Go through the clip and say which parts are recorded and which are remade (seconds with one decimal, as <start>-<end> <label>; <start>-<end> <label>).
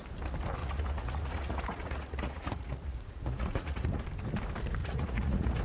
0.0-0.6 recorded; 0.6-4.0 remade; 4.0-4.8 recorded; 4.8-5.6 remade